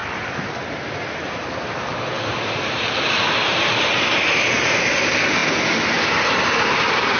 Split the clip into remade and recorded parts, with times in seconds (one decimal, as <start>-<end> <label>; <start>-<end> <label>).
0.0-5.4 remade; 5.4-6.7 recorded; 6.7-7.2 remade